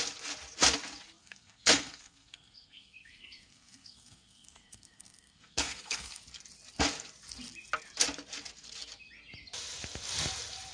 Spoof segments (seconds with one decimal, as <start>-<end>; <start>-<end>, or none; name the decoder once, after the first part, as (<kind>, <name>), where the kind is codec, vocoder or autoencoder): 1.2-6.2 (codec, SNAC)